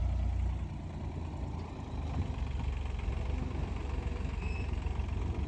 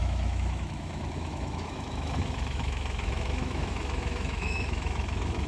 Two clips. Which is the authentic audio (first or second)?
first